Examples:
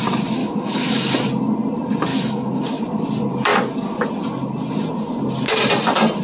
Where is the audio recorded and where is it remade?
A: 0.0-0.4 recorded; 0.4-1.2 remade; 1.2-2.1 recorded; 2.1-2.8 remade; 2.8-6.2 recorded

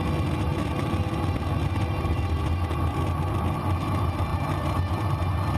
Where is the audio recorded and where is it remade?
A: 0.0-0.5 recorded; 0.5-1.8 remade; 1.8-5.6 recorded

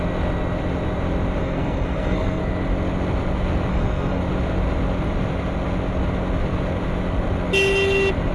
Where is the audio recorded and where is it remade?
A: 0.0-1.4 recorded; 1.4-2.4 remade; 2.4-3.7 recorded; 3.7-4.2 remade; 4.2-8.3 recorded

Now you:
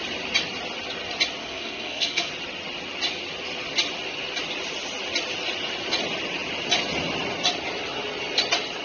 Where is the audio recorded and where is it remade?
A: 0.0-1.4 recorded; 1.4-2.3 remade; 2.3-8.8 recorded